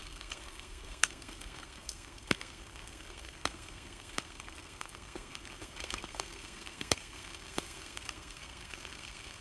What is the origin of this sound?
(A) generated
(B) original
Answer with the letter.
A